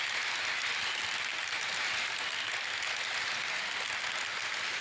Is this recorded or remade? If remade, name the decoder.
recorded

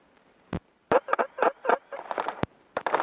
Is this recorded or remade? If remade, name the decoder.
remade, vocoder, BigVGAN v2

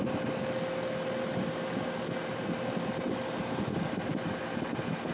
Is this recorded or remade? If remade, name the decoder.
recorded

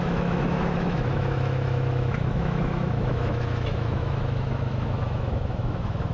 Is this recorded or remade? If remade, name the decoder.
remade, autoencoder, DAC-VAE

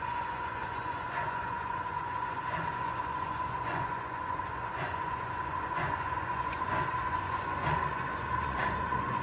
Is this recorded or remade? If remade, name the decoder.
remade, vocoder, Vocos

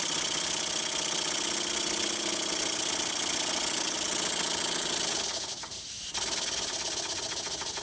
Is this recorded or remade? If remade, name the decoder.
recorded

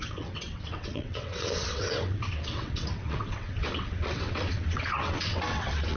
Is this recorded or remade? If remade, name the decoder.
remade, vocoder, WaveNeXt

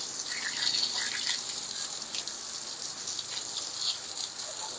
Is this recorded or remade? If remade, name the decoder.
recorded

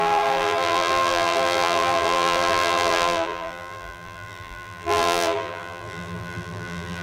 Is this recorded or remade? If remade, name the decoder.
remade, vocoder, BigVGAN v2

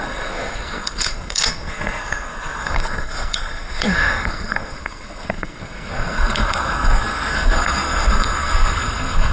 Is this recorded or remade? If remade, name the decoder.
remade, codec, SNAC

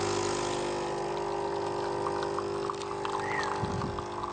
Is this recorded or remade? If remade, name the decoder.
recorded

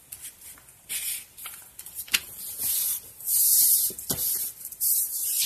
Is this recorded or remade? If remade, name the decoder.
remade, vocoder, BigVGAN v2